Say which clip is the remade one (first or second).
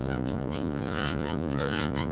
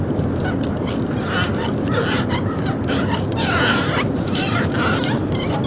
first